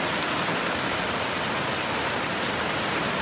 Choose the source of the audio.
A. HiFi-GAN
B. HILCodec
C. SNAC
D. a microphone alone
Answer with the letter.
D